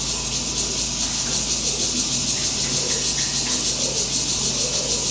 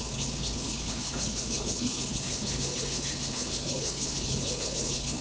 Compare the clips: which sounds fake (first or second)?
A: second